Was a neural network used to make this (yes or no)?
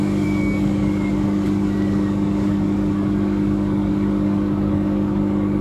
yes